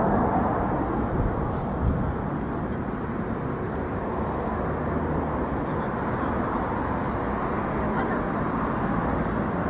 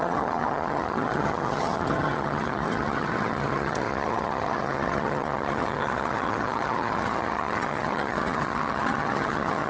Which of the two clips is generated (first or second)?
second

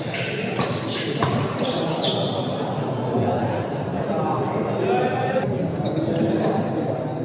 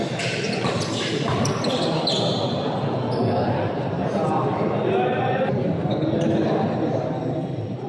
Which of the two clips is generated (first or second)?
second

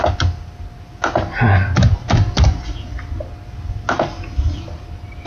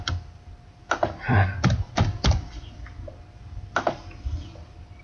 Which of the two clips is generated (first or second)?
second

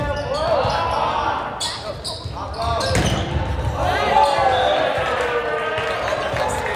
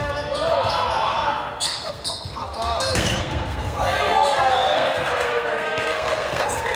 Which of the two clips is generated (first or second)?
second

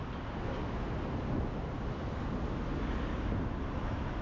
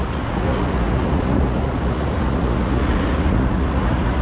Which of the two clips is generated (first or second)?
second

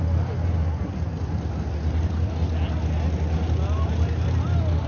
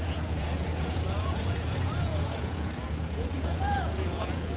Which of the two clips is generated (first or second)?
second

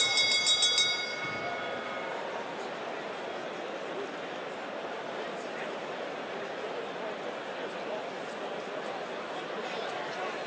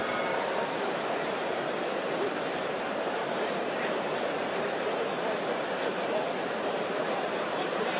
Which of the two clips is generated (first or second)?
second